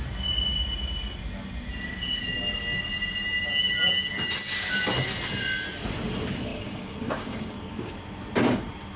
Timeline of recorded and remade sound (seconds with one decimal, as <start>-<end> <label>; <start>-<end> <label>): 0.0-6.5 recorded; 6.5-7.9 remade; 7.9-9.0 recorded